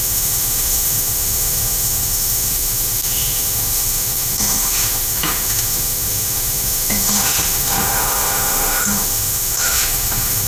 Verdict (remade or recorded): remade